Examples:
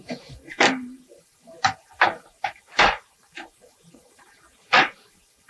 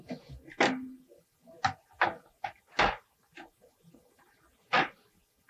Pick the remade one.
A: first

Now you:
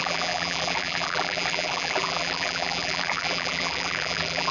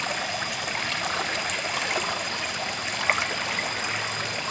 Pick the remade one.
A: first